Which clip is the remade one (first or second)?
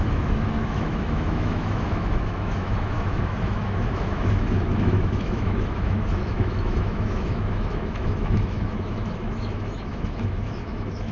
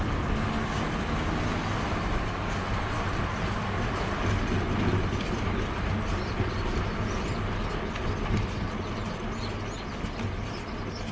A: first